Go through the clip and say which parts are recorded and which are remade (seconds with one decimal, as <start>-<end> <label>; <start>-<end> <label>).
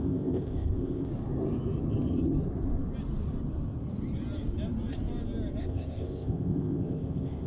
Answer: 0.0-1.1 remade; 1.1-5.6 recorded; 5.6-7.5 remade